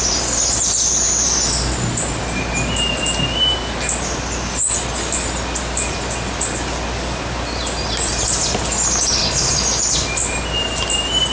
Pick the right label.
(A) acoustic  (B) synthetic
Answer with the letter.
A